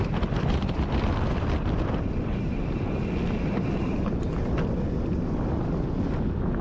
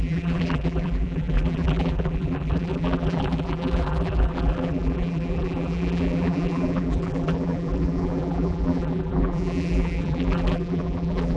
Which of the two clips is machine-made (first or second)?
second